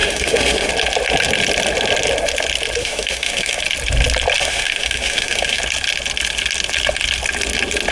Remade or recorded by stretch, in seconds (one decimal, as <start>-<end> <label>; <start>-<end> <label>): 0.0-0.7 remade; 0.7-2.8 recorded; 2.8-3.6 remade; 3.6-4.4 recorded; 4.4-5.6 remade; 5.6-7.9 recorded